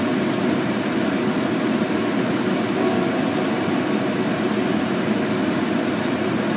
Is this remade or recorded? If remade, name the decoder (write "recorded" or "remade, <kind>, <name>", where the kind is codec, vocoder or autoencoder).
recorded